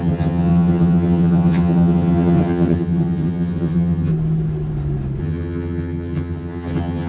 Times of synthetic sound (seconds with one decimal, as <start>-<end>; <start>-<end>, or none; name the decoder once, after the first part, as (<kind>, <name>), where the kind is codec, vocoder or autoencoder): 0.0-4.1 (vocoder, HiFi-GAN); 5.2-7.1